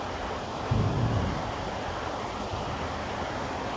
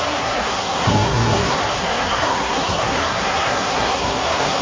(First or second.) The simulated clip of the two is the second